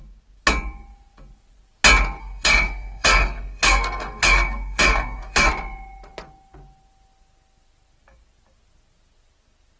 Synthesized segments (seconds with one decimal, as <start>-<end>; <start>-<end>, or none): 2.2-5.5